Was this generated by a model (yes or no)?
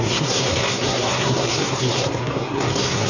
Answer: yes